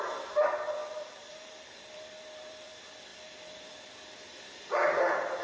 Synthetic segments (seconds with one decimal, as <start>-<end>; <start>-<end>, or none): 0.8-2.7; 3.1-3.7